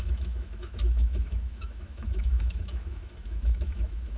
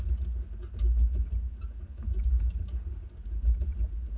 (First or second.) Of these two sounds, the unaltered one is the second